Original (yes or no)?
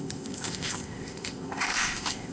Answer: no